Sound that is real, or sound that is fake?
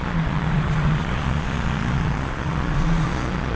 fake